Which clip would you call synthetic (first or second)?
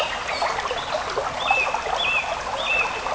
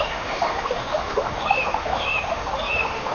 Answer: second